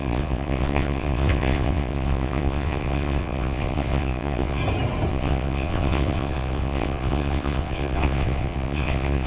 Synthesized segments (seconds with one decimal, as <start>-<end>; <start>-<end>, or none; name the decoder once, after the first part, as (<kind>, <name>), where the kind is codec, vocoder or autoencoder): 0.0-4.6 (vocoder, WaveNeXt); 5.1-9.3